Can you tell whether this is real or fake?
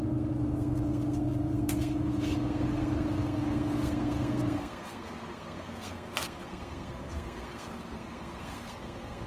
fake